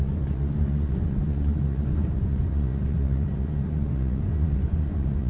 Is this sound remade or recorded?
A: remade